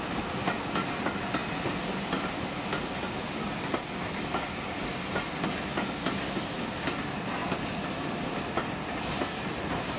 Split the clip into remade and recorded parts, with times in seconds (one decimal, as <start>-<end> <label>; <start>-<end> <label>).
0.0-10.0 recorded